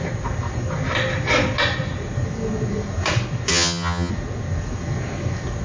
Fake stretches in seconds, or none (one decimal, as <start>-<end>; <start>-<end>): 3.5-4.1